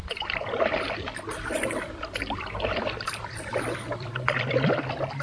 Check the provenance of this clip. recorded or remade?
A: remade